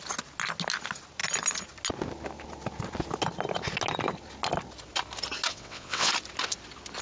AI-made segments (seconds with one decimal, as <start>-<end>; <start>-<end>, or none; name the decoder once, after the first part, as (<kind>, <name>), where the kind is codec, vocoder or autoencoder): 5.5-6.1 (vocoder, WaveNeXt)